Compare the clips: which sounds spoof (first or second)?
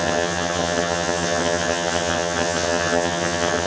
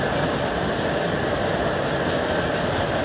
first